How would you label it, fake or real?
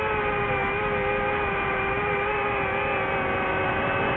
real